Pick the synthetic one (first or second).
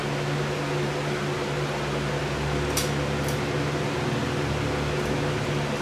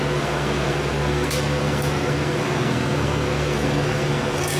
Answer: second